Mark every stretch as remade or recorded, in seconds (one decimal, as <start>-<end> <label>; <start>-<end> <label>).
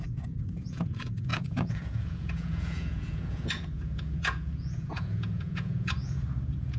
0.0-6.8 remade